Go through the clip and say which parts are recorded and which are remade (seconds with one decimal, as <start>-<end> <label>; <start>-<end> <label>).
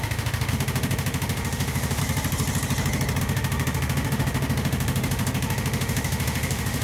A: 0.0-2.0 remade; 2.0-3.2 recorded; 3.2-6.8 remade